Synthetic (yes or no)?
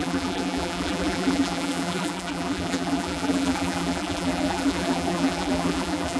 yes